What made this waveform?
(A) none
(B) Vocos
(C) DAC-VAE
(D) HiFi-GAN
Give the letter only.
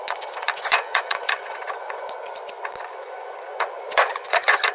B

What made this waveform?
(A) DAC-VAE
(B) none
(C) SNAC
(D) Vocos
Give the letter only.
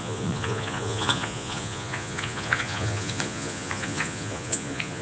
D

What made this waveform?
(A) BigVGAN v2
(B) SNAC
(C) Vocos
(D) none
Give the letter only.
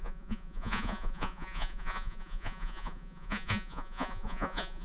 C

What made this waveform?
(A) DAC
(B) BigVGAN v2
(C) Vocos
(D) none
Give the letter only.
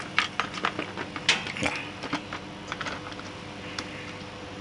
D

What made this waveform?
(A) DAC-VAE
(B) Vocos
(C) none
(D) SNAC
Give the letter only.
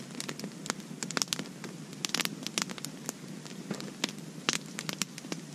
C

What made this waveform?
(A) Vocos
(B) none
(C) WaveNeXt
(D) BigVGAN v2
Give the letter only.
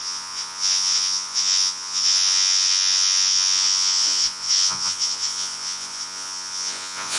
A